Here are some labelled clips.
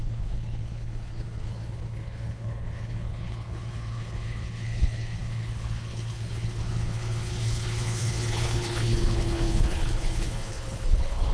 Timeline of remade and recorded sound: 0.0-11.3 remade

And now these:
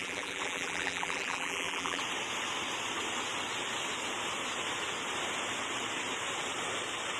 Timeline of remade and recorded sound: 0.0-2.0 remade; 2.0-7.2 recorded

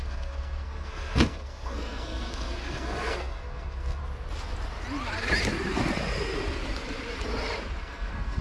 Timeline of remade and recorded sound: 0.0-4.0 remade; 4.0-7.8 recorded; 7.8-8.4 remade

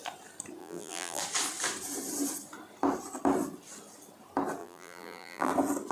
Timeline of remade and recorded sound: 0.0-0.6 recorded; 0.6-1.2 remade; 1.2-4.6 recorded; 4.6-5.5 remade; 5.5-5.9 recorded

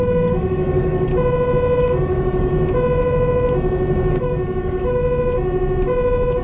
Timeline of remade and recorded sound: 0.0-1.1 remade; 1.1-1.8 recorded; 1.8-2.5 remade; 2.5-4.1 recorded; 4.1-5.0 remade; 5.0-6.4 recorded